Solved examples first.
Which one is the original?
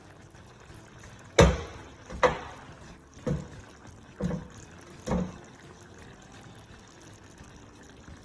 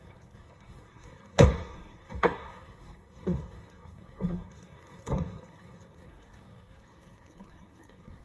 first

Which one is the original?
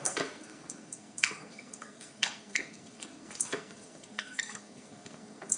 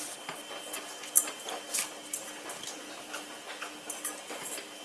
second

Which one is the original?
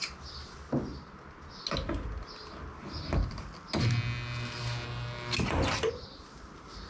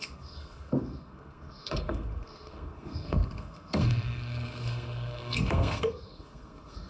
first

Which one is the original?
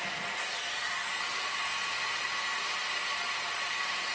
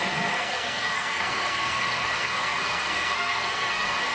first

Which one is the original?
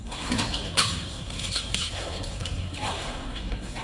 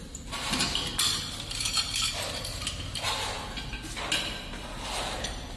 second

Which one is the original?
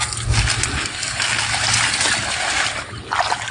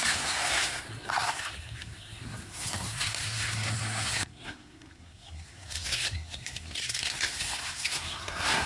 first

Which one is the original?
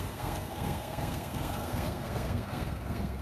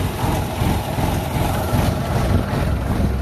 second